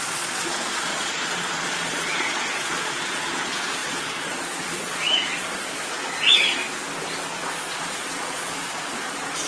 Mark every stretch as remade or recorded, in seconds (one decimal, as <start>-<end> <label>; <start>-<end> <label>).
0.0-6.6 remade; 6.6-7.3 recorded; 7.3-9.5 remade